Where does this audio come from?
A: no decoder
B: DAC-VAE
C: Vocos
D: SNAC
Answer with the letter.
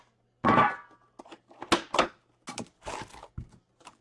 A